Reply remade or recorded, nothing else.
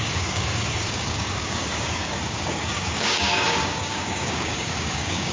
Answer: remade